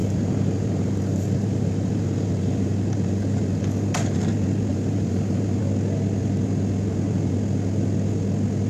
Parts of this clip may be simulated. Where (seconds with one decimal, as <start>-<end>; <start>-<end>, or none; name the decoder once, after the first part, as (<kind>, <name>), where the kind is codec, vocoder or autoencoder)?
0.0-3.6 (vocoder, BigVGAN v2); 4.7-5.6